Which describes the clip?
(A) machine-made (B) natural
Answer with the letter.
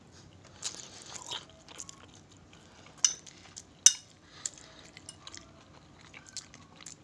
B